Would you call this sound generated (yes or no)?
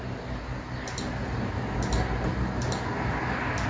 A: no